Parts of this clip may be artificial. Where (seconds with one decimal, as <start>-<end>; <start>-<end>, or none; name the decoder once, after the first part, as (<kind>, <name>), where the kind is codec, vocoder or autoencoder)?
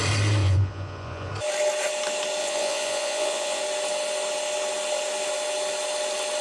0.4-1.3 (vocoder, Vocos); 2.4-3.6